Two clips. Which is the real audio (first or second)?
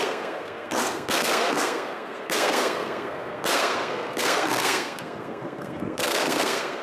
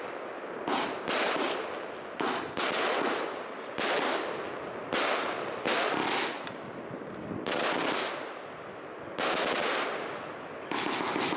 second